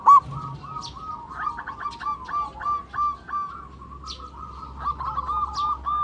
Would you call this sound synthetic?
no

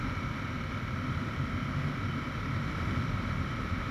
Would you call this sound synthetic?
no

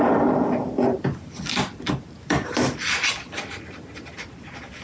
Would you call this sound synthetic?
yes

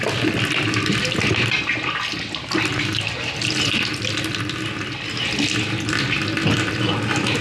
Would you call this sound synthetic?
no